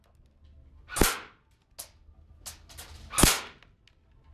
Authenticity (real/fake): real